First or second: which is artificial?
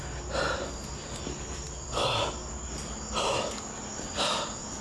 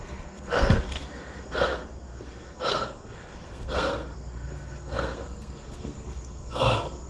second